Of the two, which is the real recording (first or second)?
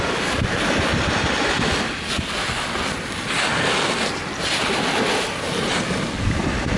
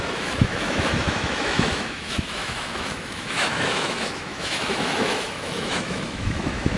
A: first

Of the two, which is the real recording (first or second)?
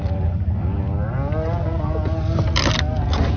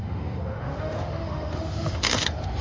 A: first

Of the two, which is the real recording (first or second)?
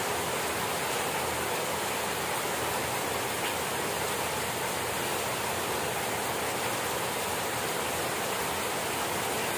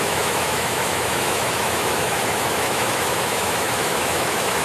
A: first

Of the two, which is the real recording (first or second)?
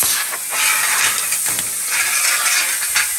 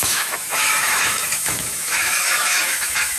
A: first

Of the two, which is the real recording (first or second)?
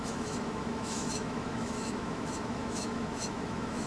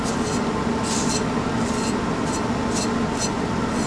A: second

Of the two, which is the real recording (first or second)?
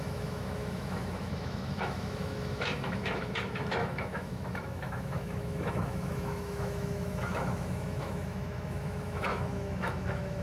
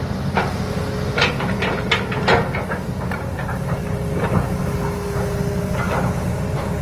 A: second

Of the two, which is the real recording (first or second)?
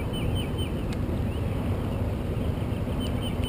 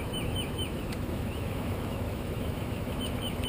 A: first